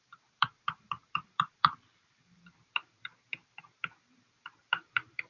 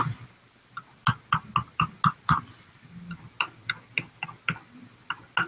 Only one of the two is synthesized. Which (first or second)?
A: first